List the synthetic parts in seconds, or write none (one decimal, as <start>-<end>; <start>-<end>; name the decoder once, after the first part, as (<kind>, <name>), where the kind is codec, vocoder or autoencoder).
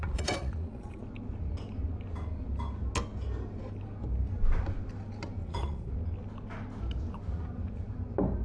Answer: 0.0-1.0 (vocoder, Vocos); 5.4-5.9